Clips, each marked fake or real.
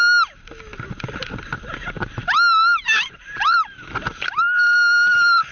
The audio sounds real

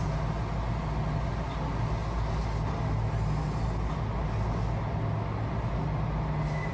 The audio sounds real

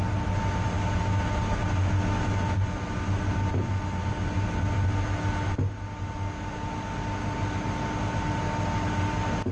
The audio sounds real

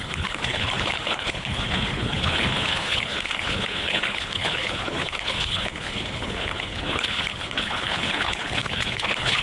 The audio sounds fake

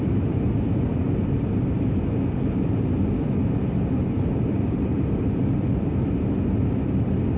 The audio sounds real